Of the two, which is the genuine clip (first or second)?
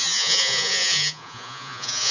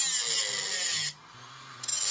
second